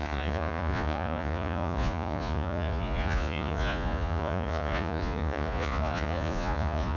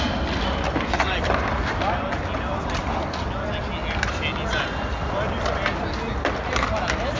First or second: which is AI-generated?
first